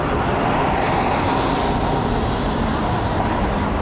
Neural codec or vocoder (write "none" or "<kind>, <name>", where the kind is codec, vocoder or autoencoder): none